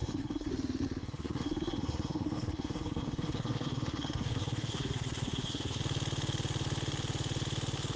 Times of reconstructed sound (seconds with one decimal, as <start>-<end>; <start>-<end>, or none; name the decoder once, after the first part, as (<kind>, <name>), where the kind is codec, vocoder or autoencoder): 0.0-0.5 (codec, SNAC); 1.0-5.8

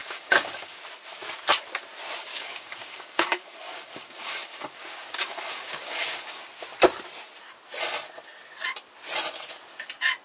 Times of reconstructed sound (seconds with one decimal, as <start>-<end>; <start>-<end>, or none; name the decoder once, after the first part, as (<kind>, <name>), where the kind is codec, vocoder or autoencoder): 0.0-0.8 (codec, DAC); 2.3-6.5

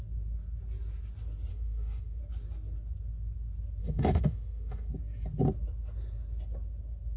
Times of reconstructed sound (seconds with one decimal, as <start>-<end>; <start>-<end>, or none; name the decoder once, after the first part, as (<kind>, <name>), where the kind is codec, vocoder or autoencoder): 1.5-2.2 (autoencoder, DAC-VAE); 3.8-4.9

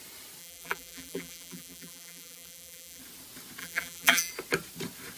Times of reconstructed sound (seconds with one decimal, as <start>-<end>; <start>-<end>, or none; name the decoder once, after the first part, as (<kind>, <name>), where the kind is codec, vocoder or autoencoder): 0.4-3.0 (vocoder, BigVGAN v2); 3.6-4.3

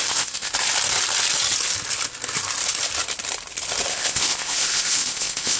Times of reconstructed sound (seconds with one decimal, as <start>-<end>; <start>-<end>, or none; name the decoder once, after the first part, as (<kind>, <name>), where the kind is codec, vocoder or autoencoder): 0.0-0.5 (codec, ZipCodec); 3.9-5.6

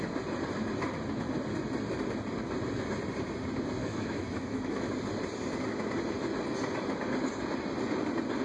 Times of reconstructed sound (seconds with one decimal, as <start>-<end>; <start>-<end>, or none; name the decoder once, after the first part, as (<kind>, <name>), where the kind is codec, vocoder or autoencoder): 3.8-4.9 (autoencoder, DAC-VAE)

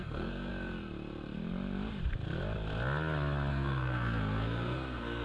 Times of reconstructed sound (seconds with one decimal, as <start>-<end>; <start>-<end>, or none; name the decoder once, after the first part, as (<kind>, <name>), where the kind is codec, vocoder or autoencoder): 0.0-0.5 (codec, SNAC); 3.5-5.2